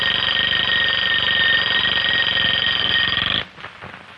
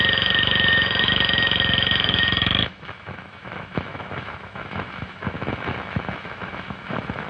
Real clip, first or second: first